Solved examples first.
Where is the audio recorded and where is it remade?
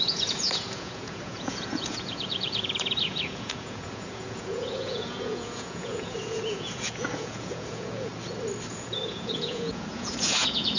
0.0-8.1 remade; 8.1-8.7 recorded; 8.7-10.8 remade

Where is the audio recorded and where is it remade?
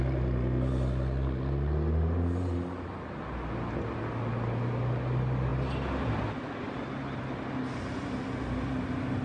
0.0-9.2 recorded